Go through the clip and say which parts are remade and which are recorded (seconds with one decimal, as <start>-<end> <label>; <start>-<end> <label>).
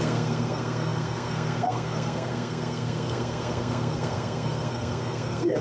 0.0-5.6 remade